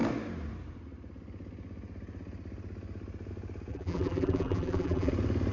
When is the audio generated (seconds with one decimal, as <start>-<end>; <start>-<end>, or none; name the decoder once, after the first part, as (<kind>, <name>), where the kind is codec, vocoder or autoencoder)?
3.7-5.1 (vocoder, BigVGAN v2)